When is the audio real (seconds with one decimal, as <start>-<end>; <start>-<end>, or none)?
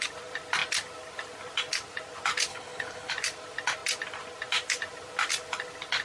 0.0-2.5; 3.1-6.0